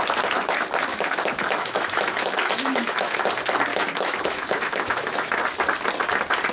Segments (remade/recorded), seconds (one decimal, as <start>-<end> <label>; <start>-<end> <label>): 0.0-0.9 recorded; 0.9-3.3 remade; 3.3-3.7 recorded; 3.7-5.4 remade; 5.4-6.5 recorded